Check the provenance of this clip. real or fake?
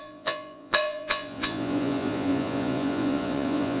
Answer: fake